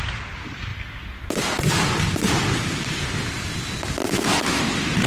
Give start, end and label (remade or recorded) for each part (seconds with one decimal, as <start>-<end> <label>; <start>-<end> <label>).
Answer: 0.0-4.0 recorded; 4.0-4.6 remade; 4.6-5.1 recorded